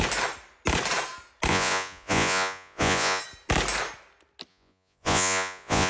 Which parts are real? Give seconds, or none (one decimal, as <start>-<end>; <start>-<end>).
0.0-1.5; 3.2-4.5